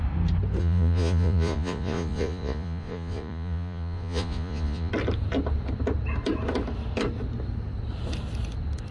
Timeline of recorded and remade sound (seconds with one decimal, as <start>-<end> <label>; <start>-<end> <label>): 0.0-0.6 recorded; 0.6-4.9 remade; 4.9-8.9 recorded